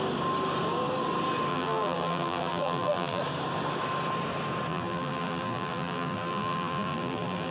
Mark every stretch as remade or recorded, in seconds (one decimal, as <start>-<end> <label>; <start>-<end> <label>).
0.0-1.5 recorded; 1.5-3.2 remade; 3.2-4.7 recorded; 4.7-7.5 remade